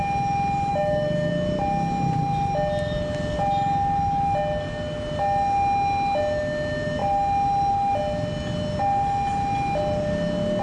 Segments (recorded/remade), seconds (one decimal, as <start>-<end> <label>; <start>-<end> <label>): 0.0-0.7 recorded; 0.7-1.3 remade; 1.3-10.6 recorded